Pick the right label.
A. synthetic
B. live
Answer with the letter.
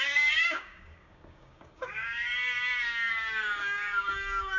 A